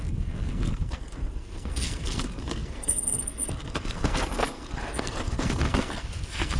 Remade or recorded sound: remade